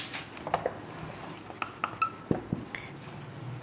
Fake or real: real